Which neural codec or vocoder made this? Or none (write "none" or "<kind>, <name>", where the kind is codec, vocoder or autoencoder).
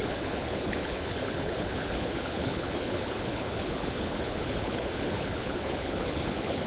codec, HILCodec